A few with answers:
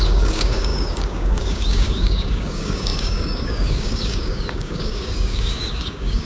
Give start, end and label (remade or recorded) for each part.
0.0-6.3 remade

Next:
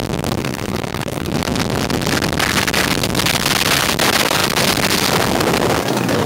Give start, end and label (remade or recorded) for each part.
0.0-0.4 recorded; 0.4-1.3 remade; 1.3-5.8 recorded; 5.8-6.3 remade

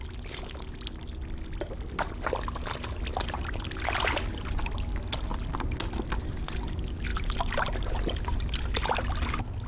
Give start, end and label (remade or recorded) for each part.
0.0-9.7 recorded

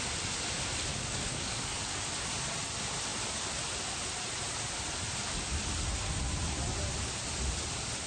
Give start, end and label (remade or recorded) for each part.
0.0-0.9 recorded; 0.9-2.0 remade; 2.0-8.1 recorded

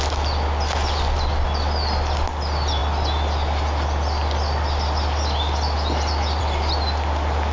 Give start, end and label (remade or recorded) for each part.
0.0-7.5 recorded

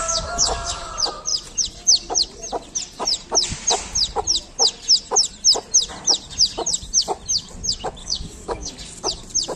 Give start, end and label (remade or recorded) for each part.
0.0-0.9 remade; 0.9-8.0 recorded; 8.0-8.7 remade; 8.7-9.6 recorded

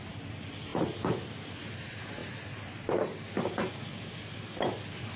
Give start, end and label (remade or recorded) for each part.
0.0-5.2 recorded